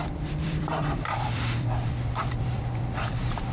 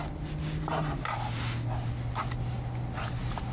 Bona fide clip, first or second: second